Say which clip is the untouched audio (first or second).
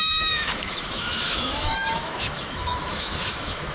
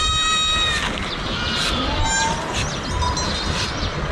second